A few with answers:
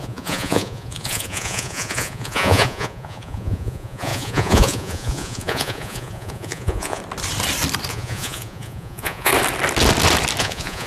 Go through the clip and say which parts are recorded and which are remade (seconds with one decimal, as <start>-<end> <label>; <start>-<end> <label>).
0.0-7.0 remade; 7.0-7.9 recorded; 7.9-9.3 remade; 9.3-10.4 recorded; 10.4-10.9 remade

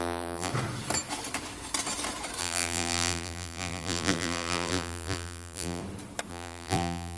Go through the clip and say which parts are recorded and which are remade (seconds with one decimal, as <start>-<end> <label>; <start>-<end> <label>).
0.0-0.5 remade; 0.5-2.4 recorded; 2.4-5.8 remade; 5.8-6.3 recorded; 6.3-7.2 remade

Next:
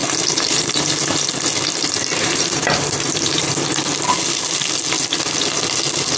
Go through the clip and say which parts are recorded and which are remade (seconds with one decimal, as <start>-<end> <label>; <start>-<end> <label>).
0.0-0.7 remade; 0.7-1.7 recorded; 1.7-3.5 remade; 3.5-6.2 recorded